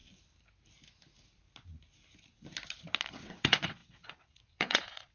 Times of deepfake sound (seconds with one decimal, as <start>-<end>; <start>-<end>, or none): 3.1-5.1